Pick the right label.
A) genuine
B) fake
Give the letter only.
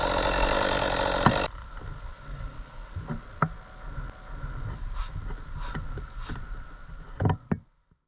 A